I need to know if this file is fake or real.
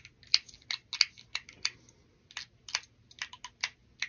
real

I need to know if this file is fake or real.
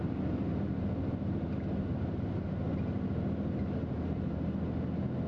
real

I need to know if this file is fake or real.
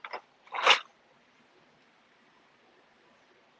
real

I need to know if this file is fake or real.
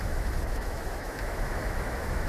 fake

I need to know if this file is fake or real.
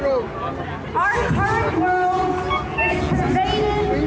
real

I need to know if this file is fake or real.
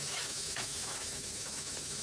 fake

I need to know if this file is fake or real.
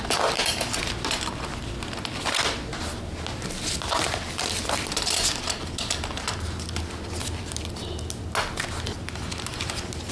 real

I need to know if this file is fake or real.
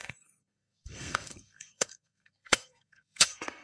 fake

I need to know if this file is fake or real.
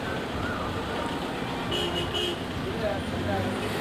real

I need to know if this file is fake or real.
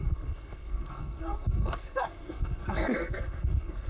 fake